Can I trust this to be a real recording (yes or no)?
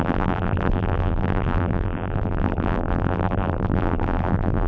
no